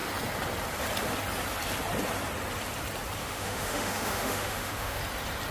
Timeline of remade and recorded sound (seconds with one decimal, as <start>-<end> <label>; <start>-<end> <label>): 0.0-3.2 recorded; 3.2-5.0 remade; 5.0-5.5 recorded